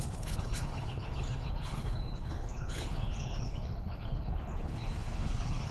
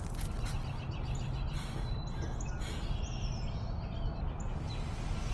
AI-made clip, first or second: first